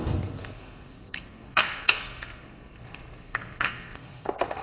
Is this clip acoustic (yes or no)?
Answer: no